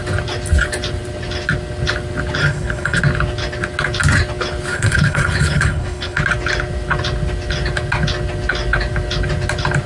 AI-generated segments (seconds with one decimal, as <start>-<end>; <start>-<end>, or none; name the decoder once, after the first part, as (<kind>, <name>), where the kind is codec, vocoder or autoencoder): 2.4-3.0 (codec, HILCodec); 4.7-6.2